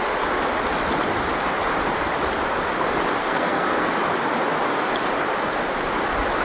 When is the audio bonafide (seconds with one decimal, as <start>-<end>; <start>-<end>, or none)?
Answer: 0.0-3.2; 3.9-6.4